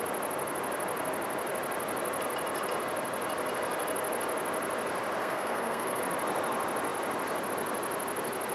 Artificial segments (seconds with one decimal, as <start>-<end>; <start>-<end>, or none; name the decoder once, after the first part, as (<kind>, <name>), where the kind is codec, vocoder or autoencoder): 5.2-6.0 (codec, SNAC)